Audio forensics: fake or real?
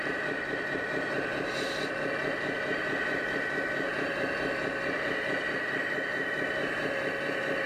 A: fake